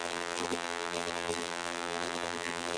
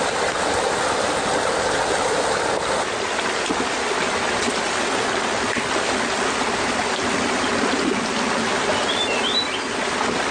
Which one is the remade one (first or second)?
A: first